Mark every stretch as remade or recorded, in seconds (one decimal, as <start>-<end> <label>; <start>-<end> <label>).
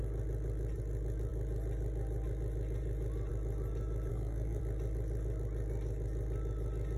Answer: 0.0-4.1 recorded; 4.1-4.6 remade; 4.6-7.0 recorded